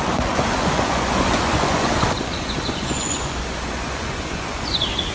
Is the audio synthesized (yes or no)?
yes